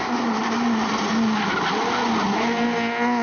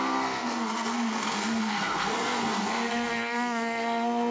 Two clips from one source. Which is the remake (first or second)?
second